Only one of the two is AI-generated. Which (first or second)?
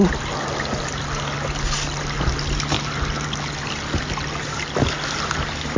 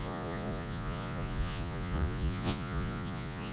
second